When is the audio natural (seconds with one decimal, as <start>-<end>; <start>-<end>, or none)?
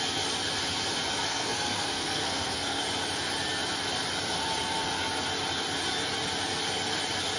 0.0-1.3; 2.8-7.4